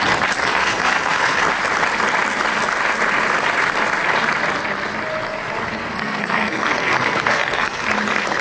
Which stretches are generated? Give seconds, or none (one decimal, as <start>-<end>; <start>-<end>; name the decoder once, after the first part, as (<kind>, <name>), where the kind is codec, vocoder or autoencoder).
0.4-1.4 (codec, SNAC); 5.7-7.9

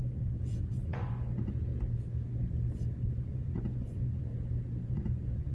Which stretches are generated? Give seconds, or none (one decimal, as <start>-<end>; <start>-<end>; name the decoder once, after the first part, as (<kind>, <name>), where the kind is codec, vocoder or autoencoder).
0.0-1.7 (vocoder, Vocos); 3.1-4.3; 4.9-5.5

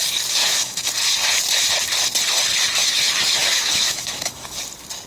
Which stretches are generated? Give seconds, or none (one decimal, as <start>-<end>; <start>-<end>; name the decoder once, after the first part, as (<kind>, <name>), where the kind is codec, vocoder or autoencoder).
0.4-0.9 (autoencoder, DAC-VAE); 2.8-4.6

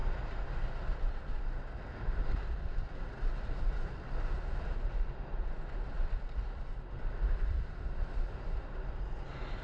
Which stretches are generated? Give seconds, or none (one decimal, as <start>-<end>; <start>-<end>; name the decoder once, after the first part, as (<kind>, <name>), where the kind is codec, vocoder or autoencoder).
none

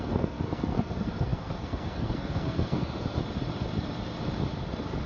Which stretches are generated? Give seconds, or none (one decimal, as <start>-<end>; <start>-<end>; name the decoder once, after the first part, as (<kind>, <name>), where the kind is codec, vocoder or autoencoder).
0.0-3.2 (codec, SNAC)